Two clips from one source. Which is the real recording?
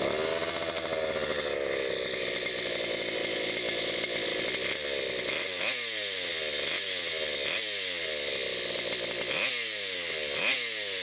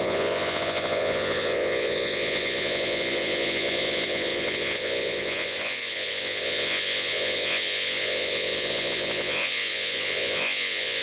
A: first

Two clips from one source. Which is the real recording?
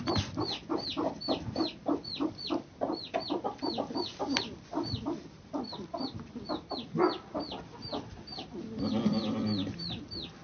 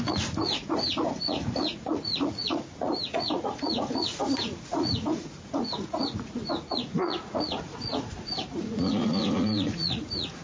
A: first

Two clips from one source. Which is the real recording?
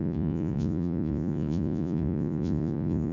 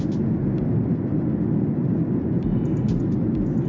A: second